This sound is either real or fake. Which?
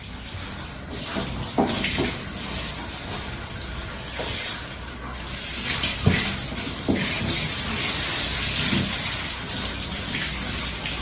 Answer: real